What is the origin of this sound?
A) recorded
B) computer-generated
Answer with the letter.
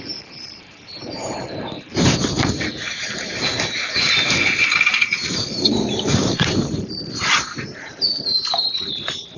B